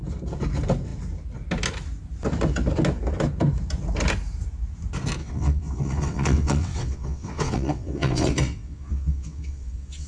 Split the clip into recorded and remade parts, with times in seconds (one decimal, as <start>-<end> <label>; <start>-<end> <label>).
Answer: 0.0-5.2 recorded; 5.2-10.1 remade

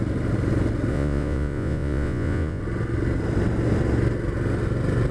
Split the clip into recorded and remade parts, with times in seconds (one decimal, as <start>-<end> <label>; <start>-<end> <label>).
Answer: 0.0-0.9 recorded; 0.9-2.6 remade; 2.6-5.1 recorded